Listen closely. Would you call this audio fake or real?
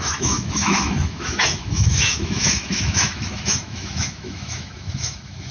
fake